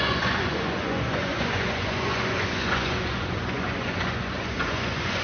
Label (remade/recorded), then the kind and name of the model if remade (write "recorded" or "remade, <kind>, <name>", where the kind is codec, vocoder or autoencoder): remade, vocoder, Vocos